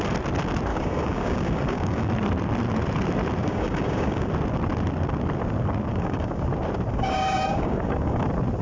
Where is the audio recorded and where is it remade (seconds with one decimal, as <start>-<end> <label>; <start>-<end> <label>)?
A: 0.0-0.7 recorded; 0.7-2.1 remade; 2.1-3.4 recorded; 3.4-4.3 remade; 4.3-5.9 recorded; 5.9-6.5 remade; 6.5-6.9 recorded; 6.9-8.2 remade; 8.2-8.6 recorded